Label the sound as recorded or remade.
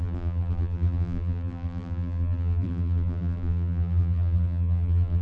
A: remade